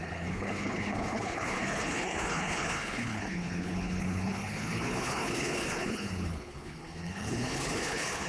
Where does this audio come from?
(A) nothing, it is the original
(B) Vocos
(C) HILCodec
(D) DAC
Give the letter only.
C